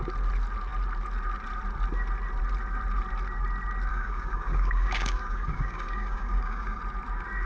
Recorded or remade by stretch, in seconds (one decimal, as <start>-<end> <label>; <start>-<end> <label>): 0.0-3.9 recorded; 3.9-6.8 remade; 6.8-7.5 recorded